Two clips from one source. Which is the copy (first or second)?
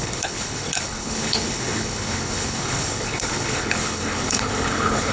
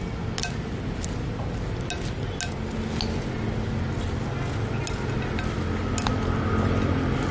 first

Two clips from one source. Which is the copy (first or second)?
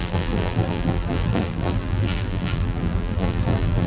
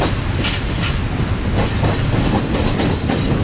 first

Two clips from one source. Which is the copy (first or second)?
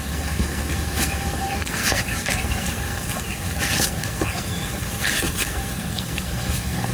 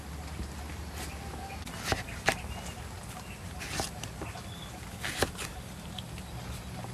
first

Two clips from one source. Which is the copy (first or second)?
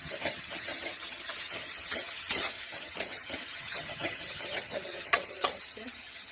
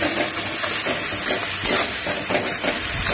first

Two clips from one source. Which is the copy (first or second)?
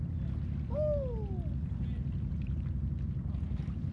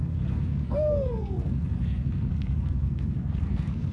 second